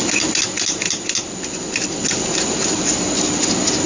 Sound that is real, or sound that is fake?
real